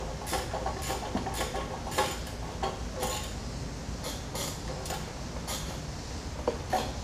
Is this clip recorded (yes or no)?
yes